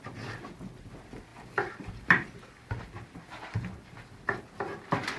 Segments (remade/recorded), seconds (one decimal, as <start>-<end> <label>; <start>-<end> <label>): 0.0-1.3 recorded; 1.3-4.4 remade; 4.4-5.2 recorded